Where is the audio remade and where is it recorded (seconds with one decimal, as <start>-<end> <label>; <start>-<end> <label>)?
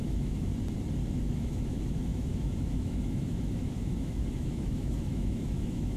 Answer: 0.0-0.5 remade; 0.5-1.3 recorded; 1.3-6.0 remade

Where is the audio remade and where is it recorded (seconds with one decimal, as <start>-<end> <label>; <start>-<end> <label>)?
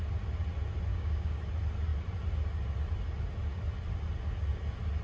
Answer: 0.0-0.9 recorded; 0.9-1.4 remade; 1.4-5.0 recorded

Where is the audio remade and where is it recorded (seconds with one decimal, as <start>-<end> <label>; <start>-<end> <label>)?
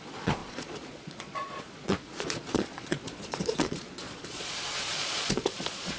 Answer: 0.0-6.0 remade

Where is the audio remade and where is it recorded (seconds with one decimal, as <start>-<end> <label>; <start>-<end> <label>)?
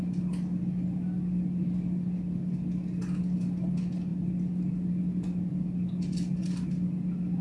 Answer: 0.0-7.4 recorded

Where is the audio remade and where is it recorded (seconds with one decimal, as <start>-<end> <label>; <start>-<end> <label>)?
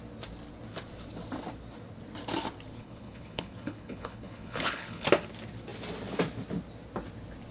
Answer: 0.0-2.8 recorded; 2.8-5.1 remade; 5.1-7.5 recorded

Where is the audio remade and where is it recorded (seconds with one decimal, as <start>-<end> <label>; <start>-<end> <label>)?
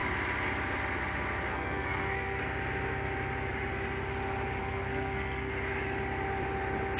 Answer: 0.0-1.5 recorded; 1.5-2.4 remade; 2.4-4.6 recorded; 4.6-5.5 remade; 5.5-7.0 recorded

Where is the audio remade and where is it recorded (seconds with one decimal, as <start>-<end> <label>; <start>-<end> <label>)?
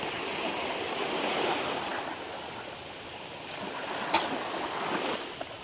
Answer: 0.0-5.6 recorded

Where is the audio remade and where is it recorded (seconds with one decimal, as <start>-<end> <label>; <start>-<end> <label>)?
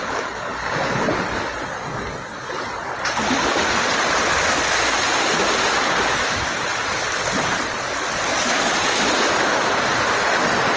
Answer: 0.0-10.8 recorded